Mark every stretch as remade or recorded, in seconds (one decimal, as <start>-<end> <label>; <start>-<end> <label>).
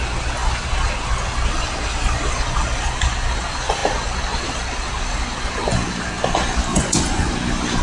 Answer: 0.0-6.7 recorded; 6.7-7.3 remade; 7.3-7.8 recorded